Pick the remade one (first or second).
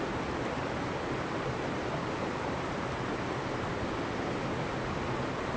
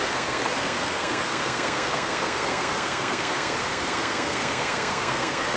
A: second